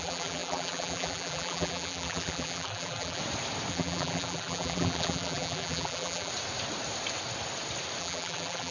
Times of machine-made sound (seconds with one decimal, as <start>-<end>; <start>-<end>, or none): 0.0-3.2; 3.7-6.3; 8.0-8.7